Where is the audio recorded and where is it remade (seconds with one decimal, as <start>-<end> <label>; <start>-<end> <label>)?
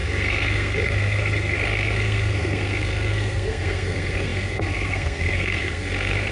0.0-6.3 remade